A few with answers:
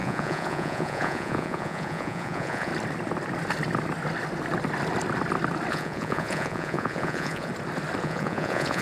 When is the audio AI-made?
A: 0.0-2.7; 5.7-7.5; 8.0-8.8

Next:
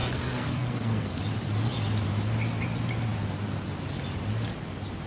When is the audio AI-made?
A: 0.0-1.2

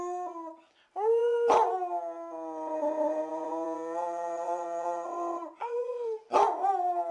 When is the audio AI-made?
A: 1.2-1.7; 3.3-6.3